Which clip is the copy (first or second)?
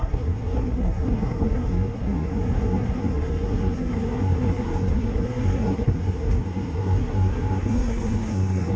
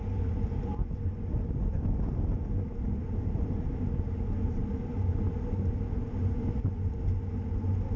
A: first